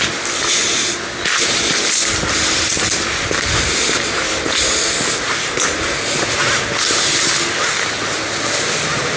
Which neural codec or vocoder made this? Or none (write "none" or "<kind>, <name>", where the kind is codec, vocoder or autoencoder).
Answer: none